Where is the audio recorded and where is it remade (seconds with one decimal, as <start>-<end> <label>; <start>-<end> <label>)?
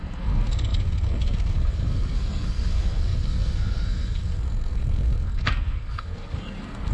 0.0-6.9 remade